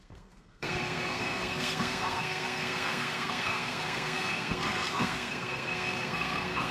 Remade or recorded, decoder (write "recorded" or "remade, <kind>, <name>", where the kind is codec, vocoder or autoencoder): remade, codec, SNAC